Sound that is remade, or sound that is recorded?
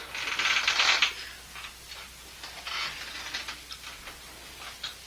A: recorded